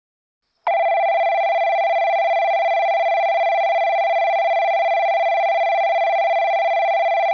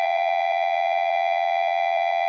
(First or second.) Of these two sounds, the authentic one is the first